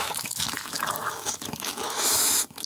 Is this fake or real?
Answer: fake